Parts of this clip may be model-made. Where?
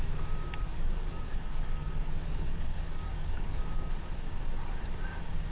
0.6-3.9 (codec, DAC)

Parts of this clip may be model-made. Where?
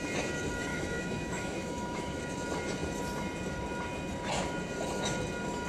0.7-2.2 (autoencoder, DAC-VAE)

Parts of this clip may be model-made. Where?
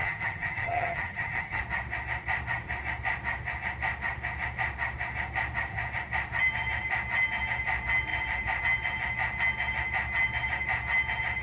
0.0-1.6 (vocoder, HiFi-GAN)